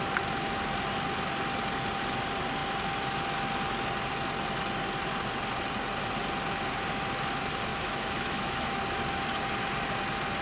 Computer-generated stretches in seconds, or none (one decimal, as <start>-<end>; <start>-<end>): 7.7-8.8